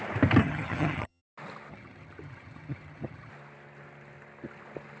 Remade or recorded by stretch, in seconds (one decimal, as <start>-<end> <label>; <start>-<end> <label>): 0.0-0.4 recorded; 0.4-1.2 remade; 1.2-1.7 recorded; 1.7-3.3 remade; 3.3-5.0 recorded